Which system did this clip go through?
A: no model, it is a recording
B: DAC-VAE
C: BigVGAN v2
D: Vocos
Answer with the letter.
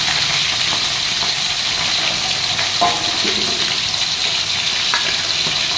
A